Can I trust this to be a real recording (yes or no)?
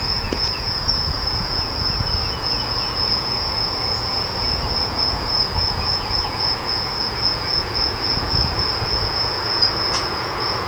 no